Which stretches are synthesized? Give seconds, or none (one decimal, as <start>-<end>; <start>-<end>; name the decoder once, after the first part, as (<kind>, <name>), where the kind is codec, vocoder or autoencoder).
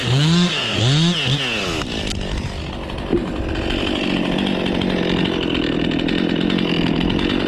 0.0-0.8 (codec, SNAC)